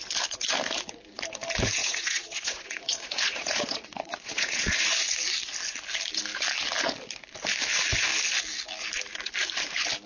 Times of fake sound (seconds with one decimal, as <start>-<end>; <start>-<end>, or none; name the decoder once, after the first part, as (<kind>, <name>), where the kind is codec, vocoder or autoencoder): 1.8-4.8 (vocoder, Vocos)